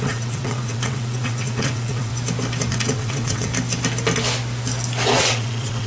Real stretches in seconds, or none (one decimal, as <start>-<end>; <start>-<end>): 2.1-2.7; 3.5-5.1